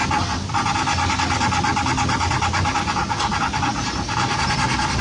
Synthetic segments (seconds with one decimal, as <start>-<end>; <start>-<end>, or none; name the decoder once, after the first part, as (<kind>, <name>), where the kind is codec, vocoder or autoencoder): 3.7-4.5 (vocoder, BigVGAN v2)